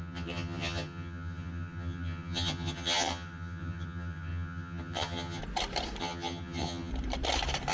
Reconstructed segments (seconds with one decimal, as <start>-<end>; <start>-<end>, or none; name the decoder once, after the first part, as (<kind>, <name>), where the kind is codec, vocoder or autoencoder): 0.0-5.4 (vocoder, HiFi-GAN); 6.0-6.9